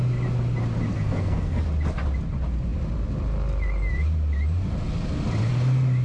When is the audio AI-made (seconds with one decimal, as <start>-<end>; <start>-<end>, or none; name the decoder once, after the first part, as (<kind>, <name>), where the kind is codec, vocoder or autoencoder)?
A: 0.9-1.6 (codec, SNAC)